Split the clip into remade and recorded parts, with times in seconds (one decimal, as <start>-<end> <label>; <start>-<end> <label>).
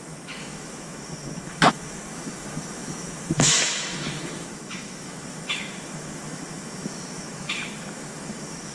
0.0-8.7 remade